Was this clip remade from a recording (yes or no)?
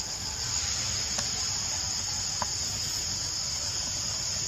no